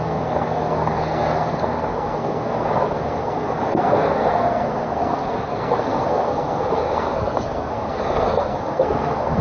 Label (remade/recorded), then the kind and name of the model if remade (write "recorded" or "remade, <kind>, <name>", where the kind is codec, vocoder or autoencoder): remade, codec, SNAC